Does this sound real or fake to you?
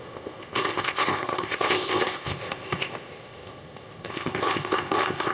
fake